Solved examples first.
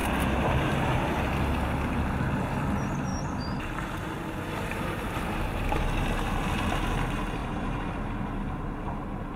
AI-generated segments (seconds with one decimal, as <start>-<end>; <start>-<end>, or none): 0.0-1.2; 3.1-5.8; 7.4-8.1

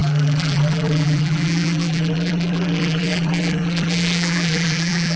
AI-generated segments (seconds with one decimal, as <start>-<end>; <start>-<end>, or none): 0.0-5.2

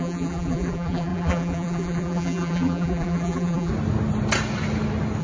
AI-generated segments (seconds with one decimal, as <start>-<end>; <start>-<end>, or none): 0.0-3.7

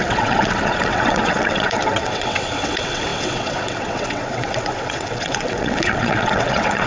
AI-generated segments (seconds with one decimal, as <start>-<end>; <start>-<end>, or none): 0.0-6.9

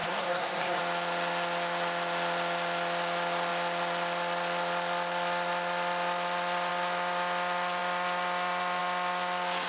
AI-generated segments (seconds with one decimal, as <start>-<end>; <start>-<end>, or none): 0.0-0.8